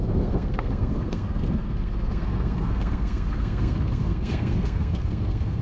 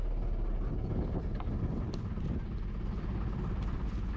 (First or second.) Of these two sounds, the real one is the second